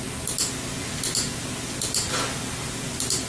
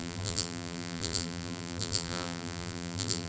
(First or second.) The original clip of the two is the first